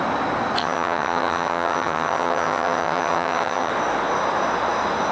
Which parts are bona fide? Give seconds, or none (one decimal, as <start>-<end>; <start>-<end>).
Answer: 0.0-0.6; 3.7-5.1